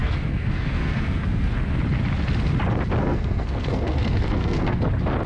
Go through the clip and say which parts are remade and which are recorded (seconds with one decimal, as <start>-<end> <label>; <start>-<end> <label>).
0.0-1.5 remade; 1.5-3.0 recorded; 3.0-4.8 remade; 4.8-5.3 recorded